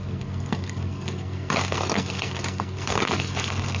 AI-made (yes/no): yes